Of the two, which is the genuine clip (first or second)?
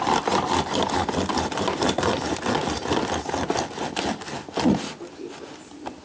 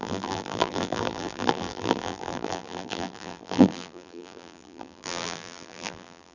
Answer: first